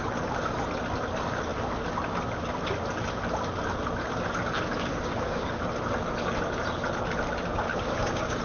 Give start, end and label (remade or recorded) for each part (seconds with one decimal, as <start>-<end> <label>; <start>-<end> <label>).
0.0-4.9 recorded; 4.9-5.6 remade; 5.6-7.7 recorded; 7.7-8.4 remade